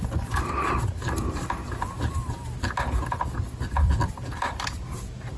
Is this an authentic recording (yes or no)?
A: yes